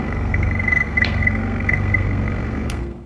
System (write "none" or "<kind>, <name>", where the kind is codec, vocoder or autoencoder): codec, SNAC